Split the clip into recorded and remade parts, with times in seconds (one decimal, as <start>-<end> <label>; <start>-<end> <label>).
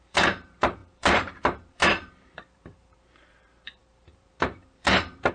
0.0-5.3 remade